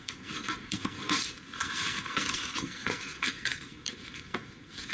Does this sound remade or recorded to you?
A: remade